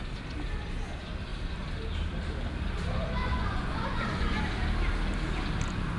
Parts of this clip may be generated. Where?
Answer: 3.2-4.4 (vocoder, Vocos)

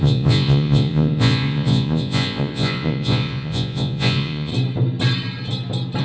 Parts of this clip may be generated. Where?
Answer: 0.0-4.5 (vocoder, Vocos)

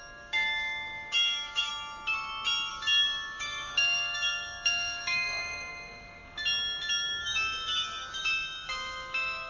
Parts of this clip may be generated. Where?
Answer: 0.0-1.7 (codec, DAC); 2.7-6.2; 6.9-9.5

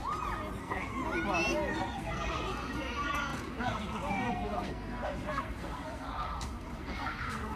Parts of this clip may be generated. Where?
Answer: 0.6-1.0 (codec, SNAC); 1.7-7.6

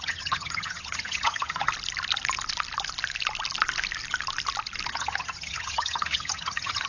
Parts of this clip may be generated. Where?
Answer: 0.0-1.7 (vocoder, HiFi-GAN); 4.9-6.9

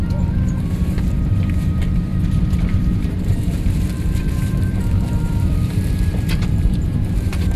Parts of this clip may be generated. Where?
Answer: 0.0-7.6 (vocoder, BigVGAN v2)

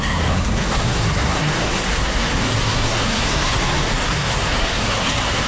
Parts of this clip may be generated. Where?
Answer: 0.0-5.5 (codec, SNAC)